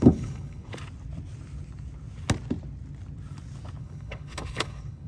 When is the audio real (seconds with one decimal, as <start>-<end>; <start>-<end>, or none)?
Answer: 0.7-3.8